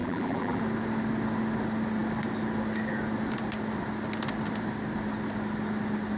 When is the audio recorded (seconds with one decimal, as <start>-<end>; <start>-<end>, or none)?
0.6-6.2